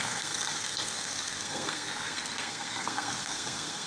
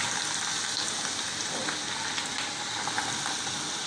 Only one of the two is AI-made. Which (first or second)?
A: first